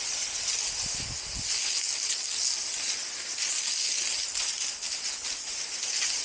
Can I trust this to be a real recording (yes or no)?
yes